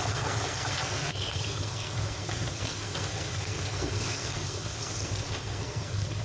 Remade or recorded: remade